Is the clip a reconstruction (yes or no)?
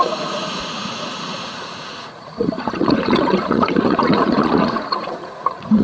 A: yes